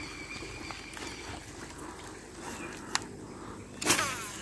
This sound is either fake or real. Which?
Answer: real